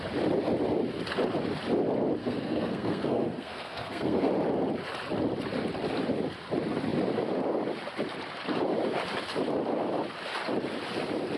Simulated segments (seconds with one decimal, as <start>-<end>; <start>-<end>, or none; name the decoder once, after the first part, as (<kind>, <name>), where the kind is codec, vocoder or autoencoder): 2.2-4.3 (codec, SNAC)